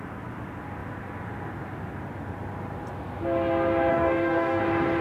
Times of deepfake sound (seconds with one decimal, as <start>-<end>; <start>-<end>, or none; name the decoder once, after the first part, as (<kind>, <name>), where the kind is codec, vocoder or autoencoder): 3.9-4.6 (codec, DAC)